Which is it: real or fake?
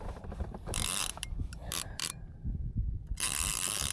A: fake